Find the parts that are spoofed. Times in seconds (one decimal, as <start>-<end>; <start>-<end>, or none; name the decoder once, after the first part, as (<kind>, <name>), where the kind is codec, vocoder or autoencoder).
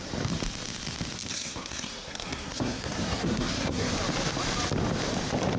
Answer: 1.3-3.9 (codec, SNAC)